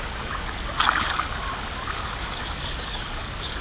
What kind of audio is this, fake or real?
fake